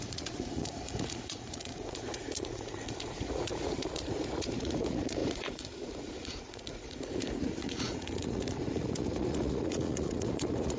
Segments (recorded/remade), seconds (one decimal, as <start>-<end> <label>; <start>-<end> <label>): 0.0-10.8 remade

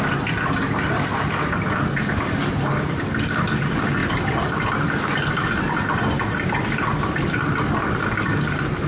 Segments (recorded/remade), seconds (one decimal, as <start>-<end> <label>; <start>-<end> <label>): 0.0-8.9 recorded

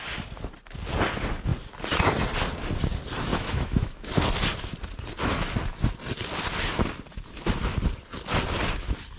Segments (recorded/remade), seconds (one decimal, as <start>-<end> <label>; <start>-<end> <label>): 0.0-3.3 recorded; 3.3-4.1 remade; 4.1-9.2 recorded

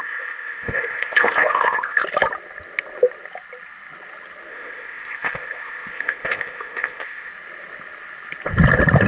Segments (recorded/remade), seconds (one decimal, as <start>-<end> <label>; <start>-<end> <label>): 0.0-2.0 remade; 2.0-4.5 recorded; 4.5-7.3 remade; 7.3-9.1 recorded

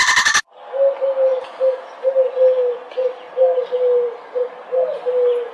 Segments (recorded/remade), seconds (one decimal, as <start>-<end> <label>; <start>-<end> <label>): 0.0-5.5 recorded

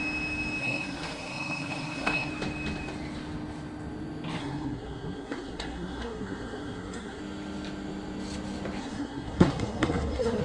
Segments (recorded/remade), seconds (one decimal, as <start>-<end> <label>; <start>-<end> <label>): 0.0-0.6 recorded; 0.6-2.3 remade; 2.3-4.4 recorded; 4.4-7.2 remade; 7.2-8.8 recorded; 8.8-10.4 remade

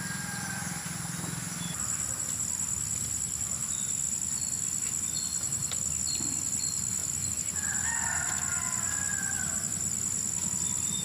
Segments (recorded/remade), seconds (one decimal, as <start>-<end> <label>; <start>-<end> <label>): 0.0-11.0 recorded

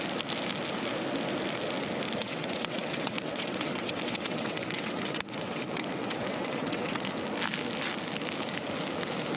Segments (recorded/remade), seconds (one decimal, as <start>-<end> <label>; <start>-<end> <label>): 0.0-2.2 recorded; 2.2-7.1 remade; 7.1-9.4 recorded